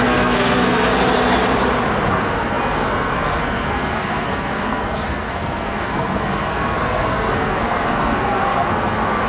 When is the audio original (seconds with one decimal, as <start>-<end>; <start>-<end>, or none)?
0.9-2.1